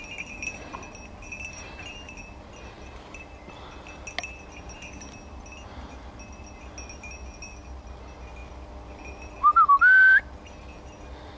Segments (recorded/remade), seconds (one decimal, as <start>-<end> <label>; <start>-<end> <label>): 0.0-11.4 recorded